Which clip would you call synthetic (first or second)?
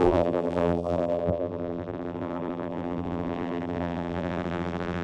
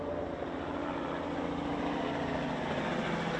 first